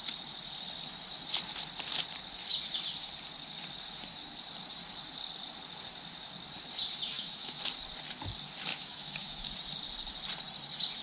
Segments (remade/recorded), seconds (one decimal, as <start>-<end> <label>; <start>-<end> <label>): 0.0-7.1 recorded; 7.1-7.6 remade; 7.6-8.7 recorded; 8.7-9.5 remade; 9.5-11.0 recorded